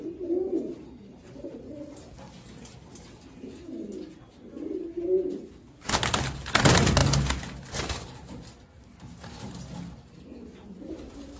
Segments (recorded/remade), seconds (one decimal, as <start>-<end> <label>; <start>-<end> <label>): 0.0-11.4 recorded